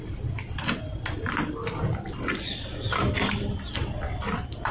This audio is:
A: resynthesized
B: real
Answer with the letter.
B